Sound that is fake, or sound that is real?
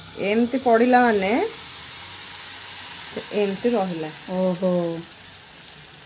real